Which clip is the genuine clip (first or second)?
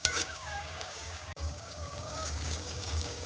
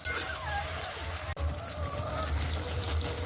second